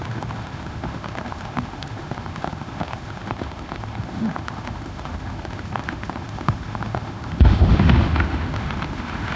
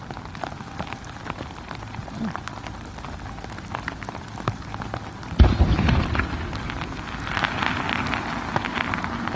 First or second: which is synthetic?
first